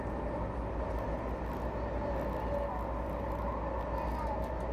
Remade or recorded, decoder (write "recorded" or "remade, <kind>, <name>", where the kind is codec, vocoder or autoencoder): recorded